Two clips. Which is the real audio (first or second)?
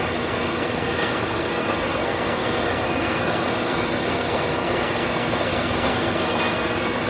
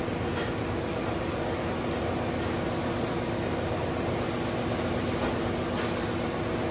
second